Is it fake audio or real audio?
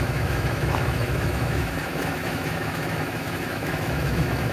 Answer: fake